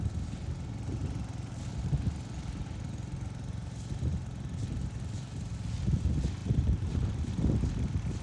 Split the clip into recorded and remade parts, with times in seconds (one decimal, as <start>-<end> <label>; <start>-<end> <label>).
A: 0.0-6.4 recorded; 6.4-7.3 remade; 7.3-8.2 recorded